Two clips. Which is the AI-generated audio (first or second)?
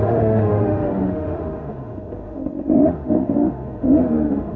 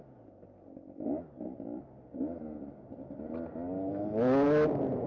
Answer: first